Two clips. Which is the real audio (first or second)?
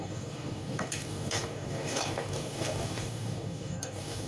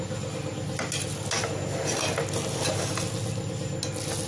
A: second